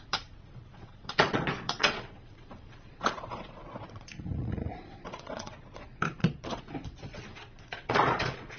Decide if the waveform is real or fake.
fake